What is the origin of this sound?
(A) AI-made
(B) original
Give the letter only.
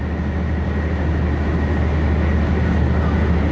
B